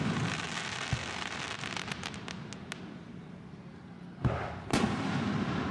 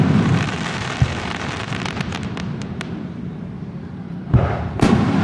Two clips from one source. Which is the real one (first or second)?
first